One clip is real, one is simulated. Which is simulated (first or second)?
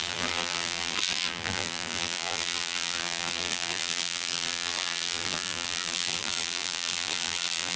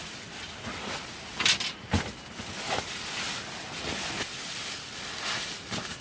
first